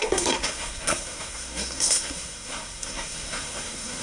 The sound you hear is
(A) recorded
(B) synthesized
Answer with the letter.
B